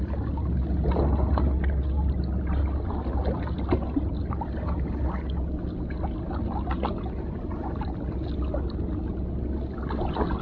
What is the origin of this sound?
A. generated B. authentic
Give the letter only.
B